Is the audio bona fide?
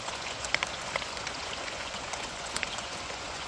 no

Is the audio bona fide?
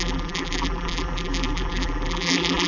no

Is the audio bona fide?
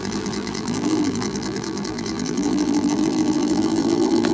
no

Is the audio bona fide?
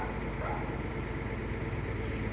yes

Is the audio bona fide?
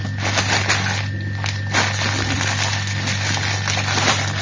yes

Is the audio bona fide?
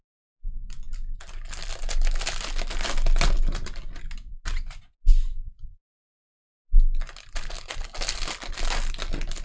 yes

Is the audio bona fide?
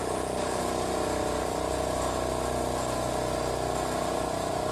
yes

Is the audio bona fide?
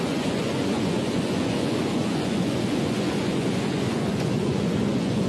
no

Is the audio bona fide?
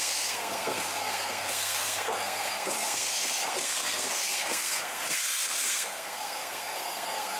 no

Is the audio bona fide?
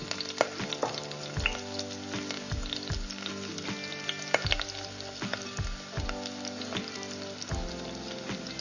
yes